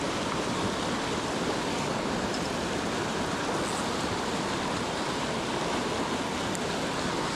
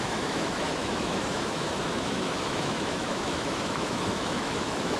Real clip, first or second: first